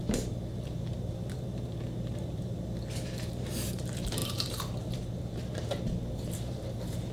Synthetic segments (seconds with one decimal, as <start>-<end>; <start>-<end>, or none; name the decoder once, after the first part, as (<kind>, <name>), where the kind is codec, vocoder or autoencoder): 0.0-7.1 (vocoder, BigVGAN v2)